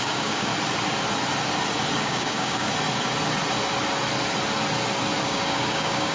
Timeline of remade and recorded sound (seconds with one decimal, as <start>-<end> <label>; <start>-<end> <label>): 0.0-0.5 remade; 0.5-2.0 recorded; 2.0-2.7 remade; 2.7-5.2 recorded; 5.2-6.1 remade